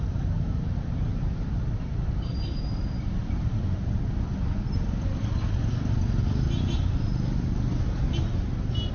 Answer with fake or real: real